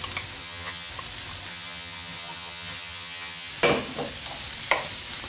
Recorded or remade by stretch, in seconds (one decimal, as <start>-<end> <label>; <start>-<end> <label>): 0.0-0.4 recorded; 0.4-0.9 remade; 0.9-1.5 recorded; 1.5-3.5 remade; 3.5-5.3 recorded